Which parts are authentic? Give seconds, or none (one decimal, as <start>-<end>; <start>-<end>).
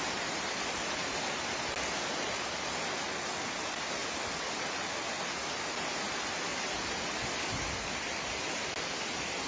1.6-9.5